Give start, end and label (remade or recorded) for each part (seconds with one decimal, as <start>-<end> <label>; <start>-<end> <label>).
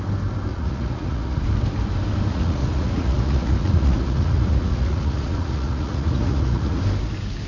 0.0-0.5 recorded; 0.5-1.4 remade; 1.4-2.3 recorded; 2.3-6.8 remade; 6.8-7.5 recorded